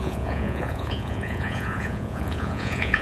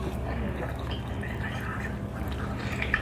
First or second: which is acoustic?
second